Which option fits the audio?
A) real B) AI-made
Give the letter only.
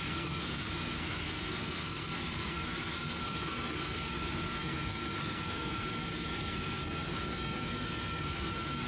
B